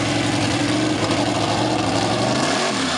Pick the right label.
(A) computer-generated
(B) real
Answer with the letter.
A